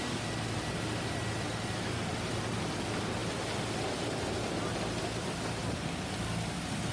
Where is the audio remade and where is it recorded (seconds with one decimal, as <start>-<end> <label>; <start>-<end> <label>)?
0.0-5.6 recorded; 5.6-6.9 remade